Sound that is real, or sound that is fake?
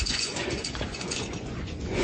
fake